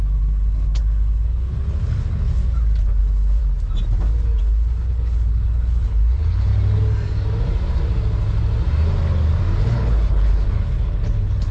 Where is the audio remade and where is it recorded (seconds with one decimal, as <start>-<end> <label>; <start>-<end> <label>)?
0.0-2.4 remade; 2.4-3.0 recorded; 3.0-3.4 remade; 3.4-4.4 recorded; 4.4-6.5 remade; 6.5-9.6 recorded; 9.6-11.5 remade